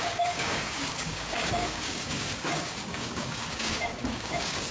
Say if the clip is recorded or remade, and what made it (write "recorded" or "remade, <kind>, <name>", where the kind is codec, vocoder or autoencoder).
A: remade, codec, DAC